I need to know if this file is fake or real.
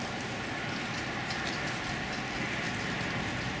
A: real